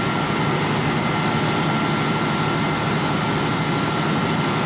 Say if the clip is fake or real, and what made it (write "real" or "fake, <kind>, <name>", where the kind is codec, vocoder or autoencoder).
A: real